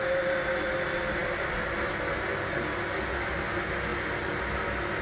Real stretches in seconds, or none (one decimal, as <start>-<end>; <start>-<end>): 0.0-5.0

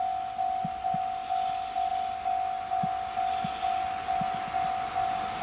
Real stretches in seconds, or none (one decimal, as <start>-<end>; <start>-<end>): 0.0-5.4